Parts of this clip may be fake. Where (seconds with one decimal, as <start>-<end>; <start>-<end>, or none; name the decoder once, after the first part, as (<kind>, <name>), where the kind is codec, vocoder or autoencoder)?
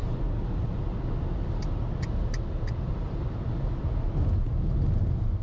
none